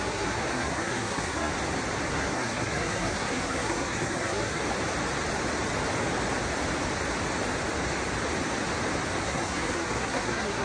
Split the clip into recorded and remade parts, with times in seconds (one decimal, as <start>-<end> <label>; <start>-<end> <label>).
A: 0.0-1.5 remade; 1.5-2.1 recorded; 2.1-4.6 remade; 4.6-9.2 recorded; 9.2-10.6 remade